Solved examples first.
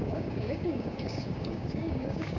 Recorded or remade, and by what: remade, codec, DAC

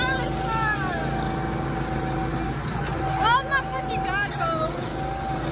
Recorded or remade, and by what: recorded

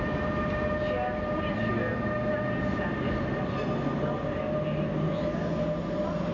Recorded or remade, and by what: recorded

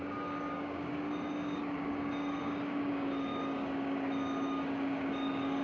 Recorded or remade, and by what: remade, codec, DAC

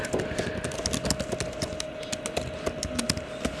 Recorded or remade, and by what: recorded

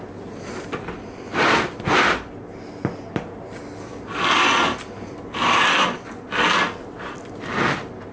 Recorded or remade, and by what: recorded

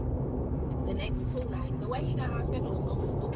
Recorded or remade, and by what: remade, codec, DAC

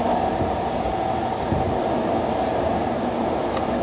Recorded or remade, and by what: recorded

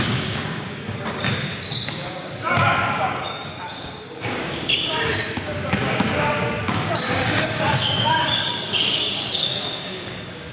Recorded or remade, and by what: remade, codec, DAC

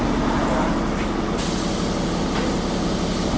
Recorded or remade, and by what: recorded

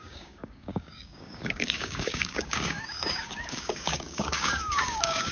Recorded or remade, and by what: remade, codec, DAC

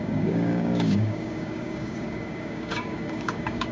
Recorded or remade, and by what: remade, codec, DAC